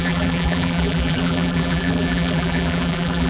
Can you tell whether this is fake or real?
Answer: fake